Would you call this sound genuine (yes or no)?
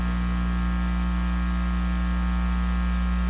yes